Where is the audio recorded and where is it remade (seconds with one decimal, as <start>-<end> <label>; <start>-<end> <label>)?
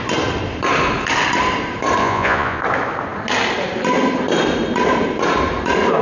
0.0-2.0 recorded; 2.0-2.6 remade; 2.6-6.0 recorded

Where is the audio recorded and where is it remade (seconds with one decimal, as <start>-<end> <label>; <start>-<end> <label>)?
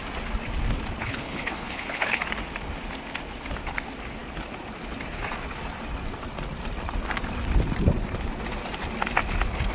0.0-1.0 recorded; 1.0-2.2 remade; 2.2-9.7 recorded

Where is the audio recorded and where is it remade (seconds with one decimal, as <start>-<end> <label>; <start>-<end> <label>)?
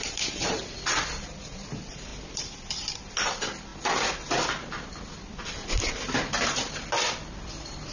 0.0-3.7 remade; 3.7-6.3 recorded; 6.3-7.9 remade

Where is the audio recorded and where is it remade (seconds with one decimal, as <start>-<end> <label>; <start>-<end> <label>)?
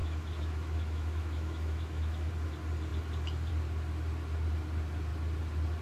0.0-2.3 remade; 2.3-5.8 recorded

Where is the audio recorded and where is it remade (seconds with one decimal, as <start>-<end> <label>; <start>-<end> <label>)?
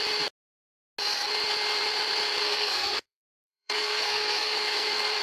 0.0-2.4 recorded; 2.4-5.2 remade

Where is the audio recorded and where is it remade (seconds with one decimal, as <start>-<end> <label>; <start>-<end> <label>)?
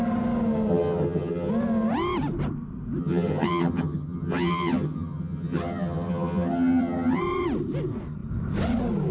0.0-0.7 recorded; 0.7-1.5 remade; 1.5-3.0 recorded; 3.0-7.2 remade; 7.2-9.1 recorded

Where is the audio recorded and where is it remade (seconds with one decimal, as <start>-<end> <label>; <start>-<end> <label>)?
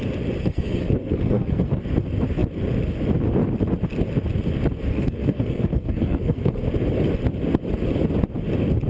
0.0-0.4 recorded; 0.4-1.8 remade; 1.8-4.9 recorded; 4.9-6.6 remade; 6.6-8.9 recorded